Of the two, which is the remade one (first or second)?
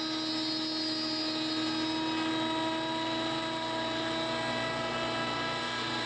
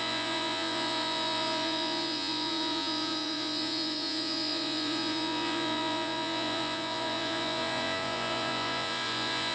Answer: second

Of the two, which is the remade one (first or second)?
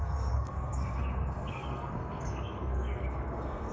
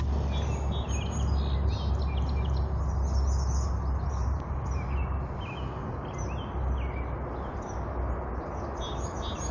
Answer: first